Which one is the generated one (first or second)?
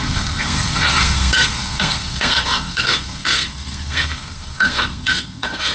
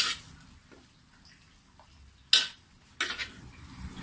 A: first